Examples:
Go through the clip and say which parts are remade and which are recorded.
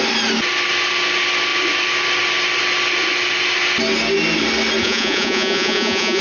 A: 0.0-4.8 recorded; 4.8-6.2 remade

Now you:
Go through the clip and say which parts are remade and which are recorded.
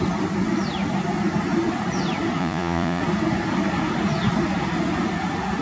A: 0.0-2.4 recorded; 2.4-3.0 remade; 3.0-5.6 recorded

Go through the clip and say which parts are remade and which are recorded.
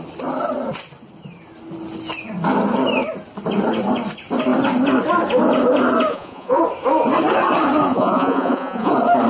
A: 0.0-6.1 recorded; 6.1-6.6 remade; 6.6-7.9 recorded; 7.9-8.9 remade; 8.9-9.3 recorded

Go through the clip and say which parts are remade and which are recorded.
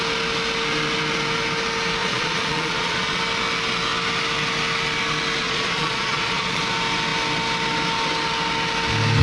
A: 0.0-2.0 recorded; 2.0-3.2 remade; 3.2-5.4 recorded; 5.4-6.6 remade; 6.6-9.2 recorded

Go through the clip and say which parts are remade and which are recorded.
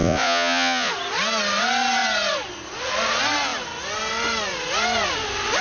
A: 0.0-0.9 remade; 0.9-5.6 recorded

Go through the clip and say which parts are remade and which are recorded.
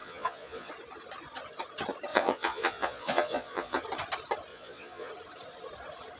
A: 0.0-0.7 remade; 0.7-2.1 recorded; 2.1-3.8 remade; 3.8-4.5 recorded; 4.5-5.1 remade; 5.1-6.2 recorded